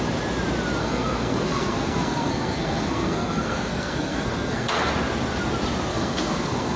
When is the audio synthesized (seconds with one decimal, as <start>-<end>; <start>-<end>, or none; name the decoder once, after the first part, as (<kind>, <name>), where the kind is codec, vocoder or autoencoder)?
0.8-4.9 (codec, SNAC); 5.9-6.8